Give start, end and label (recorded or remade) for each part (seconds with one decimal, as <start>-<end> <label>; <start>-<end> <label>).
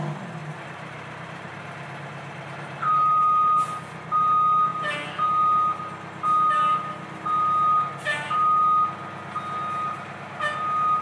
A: 0.0-0.4 recorded; 0.4-3.6 remade; 3.6-11.0 recorded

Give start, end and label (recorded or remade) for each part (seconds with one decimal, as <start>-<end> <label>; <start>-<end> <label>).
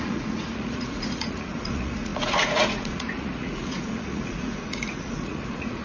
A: 0.0-5.8 remade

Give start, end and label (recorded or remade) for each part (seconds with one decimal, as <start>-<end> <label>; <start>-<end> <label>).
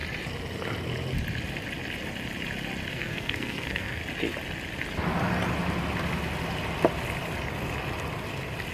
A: 0.0-2.9 recorded; 2.9-4.0 remade; 4.0-8.7 recorded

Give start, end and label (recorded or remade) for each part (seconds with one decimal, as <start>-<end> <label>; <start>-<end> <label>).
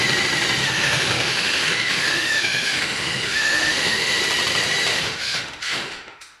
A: 0.0-0.6 recorded; 0.6-4.2 remade; 4.2-4.9 recorded; 4.9-6.4 remade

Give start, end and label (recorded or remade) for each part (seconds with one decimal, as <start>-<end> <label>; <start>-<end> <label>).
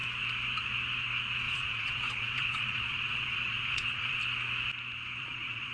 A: 0.0-1.4 recorded; 1.4-4.2 remade; 4.2-5.2 recorded; 5.2-5.7 remade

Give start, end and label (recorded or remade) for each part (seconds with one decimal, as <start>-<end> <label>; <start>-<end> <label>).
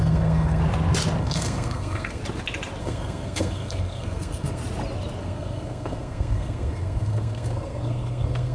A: 0.0-0.6 remade; 0.6-1.2 recorded; 1.2-2.2 remade; 2.2-2.8 recorded; 2.8-4.6 remade; 4.6-5.2 recorded; 5.2-8.5 remade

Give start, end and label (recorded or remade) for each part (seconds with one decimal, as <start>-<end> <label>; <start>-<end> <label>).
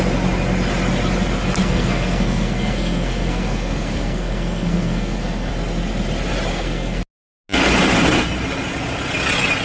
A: 0.0-1.6 recorded; 1.6-5.5 remade; 5.5-6.5 recorded; 6.5-7.0 remade; 7.0-9.6 recorded